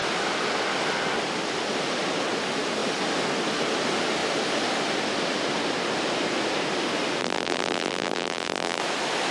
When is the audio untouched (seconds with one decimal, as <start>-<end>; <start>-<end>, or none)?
0.0-7.2; 8.8-9.3